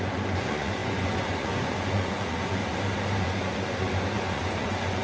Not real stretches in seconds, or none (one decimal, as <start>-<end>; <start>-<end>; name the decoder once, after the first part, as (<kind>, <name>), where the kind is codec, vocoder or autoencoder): 0.0-2.6 (vocoder, Vocos); 3.2-5.0